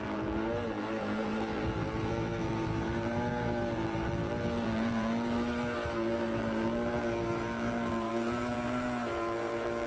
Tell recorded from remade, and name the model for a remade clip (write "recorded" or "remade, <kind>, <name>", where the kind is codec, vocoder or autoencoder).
remade, vocoder, BigVGAN v2